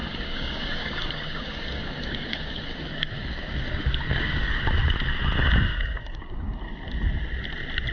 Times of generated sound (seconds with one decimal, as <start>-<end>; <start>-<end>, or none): 0.0-4.6; 5.7-6.2